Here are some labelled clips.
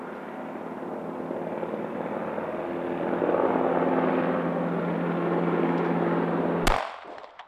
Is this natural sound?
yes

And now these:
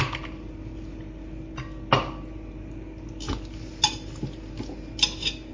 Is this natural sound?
yes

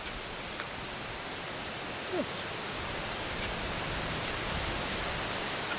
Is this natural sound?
yes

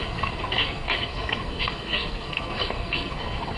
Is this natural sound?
no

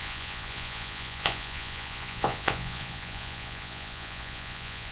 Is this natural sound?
no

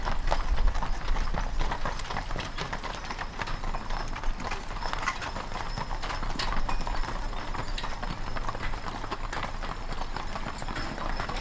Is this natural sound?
yes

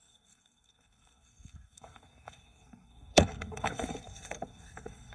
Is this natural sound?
no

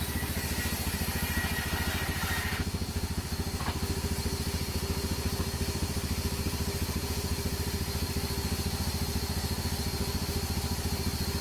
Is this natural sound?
yes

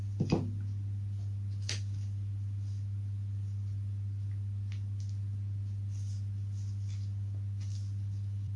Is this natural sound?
yes